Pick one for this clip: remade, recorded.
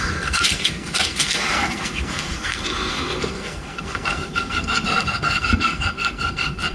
remade